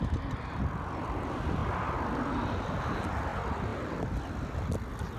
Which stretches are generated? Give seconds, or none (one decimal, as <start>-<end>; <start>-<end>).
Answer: none